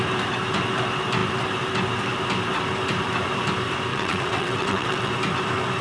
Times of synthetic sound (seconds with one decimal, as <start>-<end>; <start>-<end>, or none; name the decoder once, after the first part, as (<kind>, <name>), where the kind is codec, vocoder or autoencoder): 3.9-5.1 (vocoder, WaveNeXt)